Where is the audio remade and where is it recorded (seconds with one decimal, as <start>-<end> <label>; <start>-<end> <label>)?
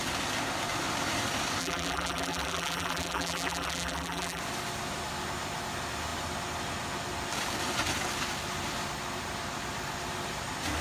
0.0-1.6 recorded; 1.6-4.4 remade; 4.4-10.8 recorded